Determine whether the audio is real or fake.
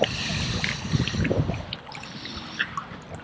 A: real